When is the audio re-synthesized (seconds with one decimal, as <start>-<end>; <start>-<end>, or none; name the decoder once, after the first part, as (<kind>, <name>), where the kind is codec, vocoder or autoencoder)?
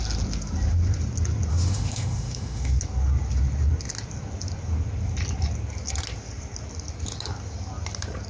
1.5-2.7 (autoencoder, DAC-VAE)